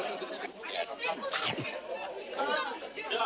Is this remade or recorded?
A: recorded